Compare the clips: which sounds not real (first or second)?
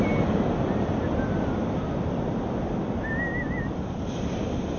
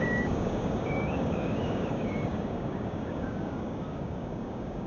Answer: second